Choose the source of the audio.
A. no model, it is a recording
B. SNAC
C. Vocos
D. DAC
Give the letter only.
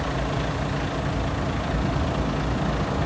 A